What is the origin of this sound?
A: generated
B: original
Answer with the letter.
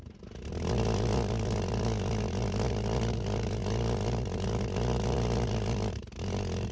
B